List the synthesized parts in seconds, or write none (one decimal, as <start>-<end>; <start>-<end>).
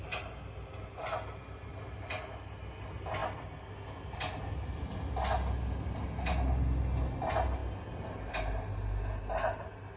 none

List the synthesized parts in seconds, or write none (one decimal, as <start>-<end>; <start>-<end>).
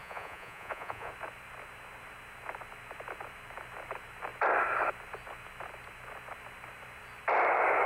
0.0-1.1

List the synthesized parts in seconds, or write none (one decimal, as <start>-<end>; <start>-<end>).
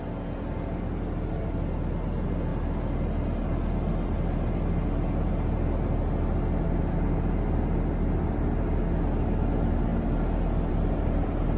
none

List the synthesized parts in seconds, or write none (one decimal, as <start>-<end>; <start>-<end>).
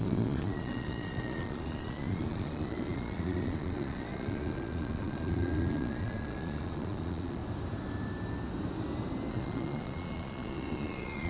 0.0-7.4; 9.3-11.3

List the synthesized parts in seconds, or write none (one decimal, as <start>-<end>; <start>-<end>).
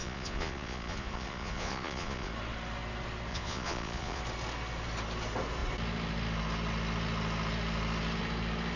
0.0-2.3; 3.3-4.2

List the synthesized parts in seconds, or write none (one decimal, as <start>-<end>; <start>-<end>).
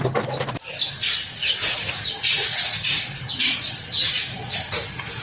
1.4-3.3; 4.0-5.2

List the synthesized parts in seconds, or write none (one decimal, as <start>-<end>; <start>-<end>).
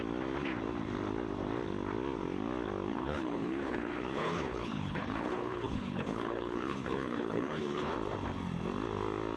2.9-7.9